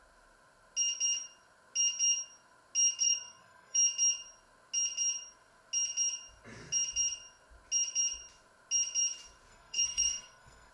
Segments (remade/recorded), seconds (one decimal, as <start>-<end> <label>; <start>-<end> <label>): 0.0-3.0 recorded; 3.0-3.8 remade; 3.8-9.5 recorded; 9.5-10.7 remade